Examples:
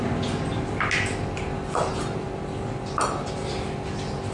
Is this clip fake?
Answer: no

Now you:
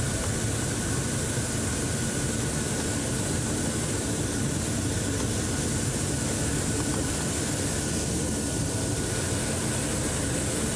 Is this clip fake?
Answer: no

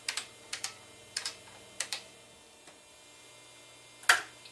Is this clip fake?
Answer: no